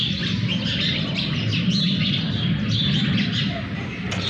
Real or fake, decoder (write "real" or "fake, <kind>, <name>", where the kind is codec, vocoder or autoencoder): real